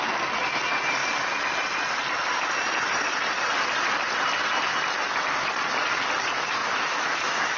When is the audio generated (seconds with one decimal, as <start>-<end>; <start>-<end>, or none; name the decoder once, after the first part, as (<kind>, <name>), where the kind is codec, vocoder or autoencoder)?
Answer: 6.6-7.6 (autoencoder, DAC-VAE)